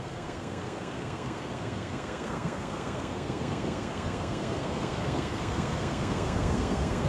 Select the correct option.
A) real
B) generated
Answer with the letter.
B